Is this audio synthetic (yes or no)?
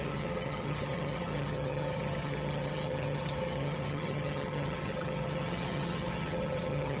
yes